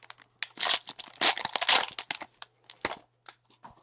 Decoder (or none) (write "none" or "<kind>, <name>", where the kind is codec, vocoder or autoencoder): none